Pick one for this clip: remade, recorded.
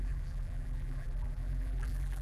remade